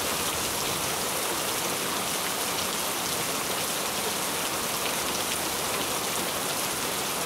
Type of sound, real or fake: real